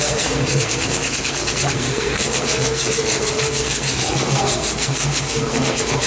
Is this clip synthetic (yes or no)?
yes